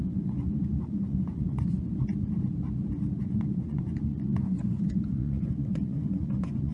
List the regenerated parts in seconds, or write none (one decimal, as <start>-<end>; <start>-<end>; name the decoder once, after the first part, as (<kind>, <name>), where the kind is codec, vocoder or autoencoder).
0.0-1.9 (vocoder, Vocos); 3.2-6.7